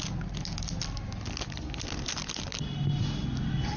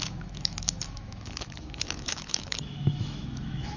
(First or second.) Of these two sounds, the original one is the first